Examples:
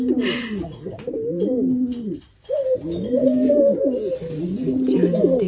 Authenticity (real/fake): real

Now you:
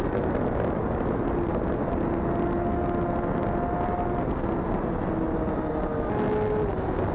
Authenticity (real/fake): real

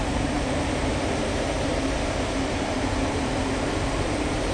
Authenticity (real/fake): fake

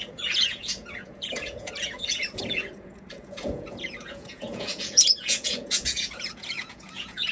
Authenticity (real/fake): fake